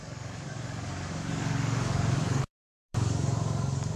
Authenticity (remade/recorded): remade